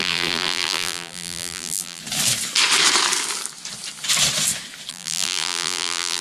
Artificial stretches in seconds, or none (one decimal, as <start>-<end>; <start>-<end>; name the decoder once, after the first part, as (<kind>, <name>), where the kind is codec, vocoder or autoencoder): 0.0-2.0 (vocoder, BigVGAN v2); 4.9-6.2